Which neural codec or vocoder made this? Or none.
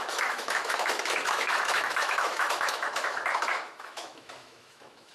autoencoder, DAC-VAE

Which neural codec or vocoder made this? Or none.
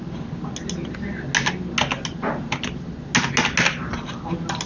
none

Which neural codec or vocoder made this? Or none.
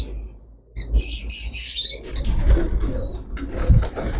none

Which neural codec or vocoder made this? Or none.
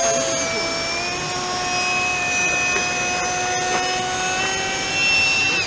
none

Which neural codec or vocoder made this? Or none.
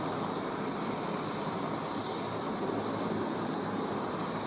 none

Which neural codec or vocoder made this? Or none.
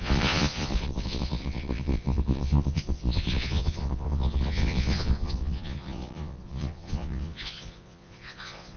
vocoder, Vocos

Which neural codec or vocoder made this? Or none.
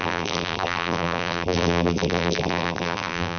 vocoder, BigVGAN v2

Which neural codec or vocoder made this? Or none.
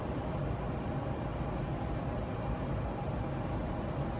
none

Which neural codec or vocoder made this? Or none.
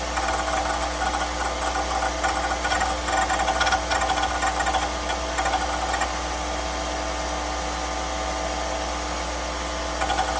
none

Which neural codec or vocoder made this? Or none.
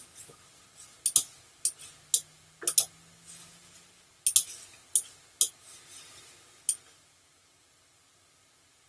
none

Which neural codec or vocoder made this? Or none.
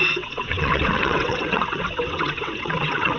vocoder, WaveNeXt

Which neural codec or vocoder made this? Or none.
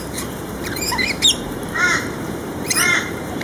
vocoder, BigVGAN v2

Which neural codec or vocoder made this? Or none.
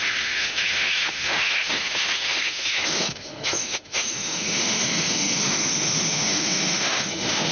autoencoder, DAC-VAE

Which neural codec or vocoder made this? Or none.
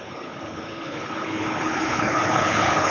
codec, HILCodec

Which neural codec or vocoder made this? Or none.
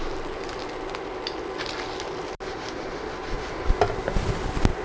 none